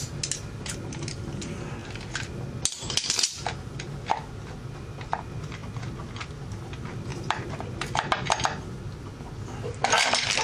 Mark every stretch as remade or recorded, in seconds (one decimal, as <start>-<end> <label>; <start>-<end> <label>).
0.0-10.4 recorded